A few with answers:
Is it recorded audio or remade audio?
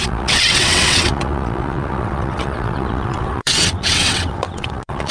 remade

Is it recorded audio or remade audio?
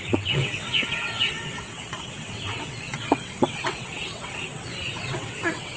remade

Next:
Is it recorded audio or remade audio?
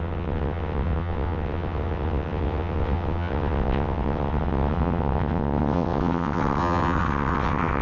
remade